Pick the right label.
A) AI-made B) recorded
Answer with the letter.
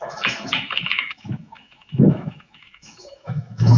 A